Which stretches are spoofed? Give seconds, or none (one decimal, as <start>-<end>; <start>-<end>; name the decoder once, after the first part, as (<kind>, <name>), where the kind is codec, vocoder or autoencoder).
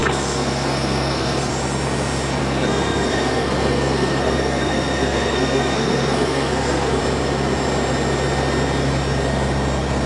0.0-1.5 (codec, SNAC); 2.4-7.0